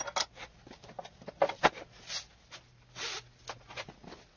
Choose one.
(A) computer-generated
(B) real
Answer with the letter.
B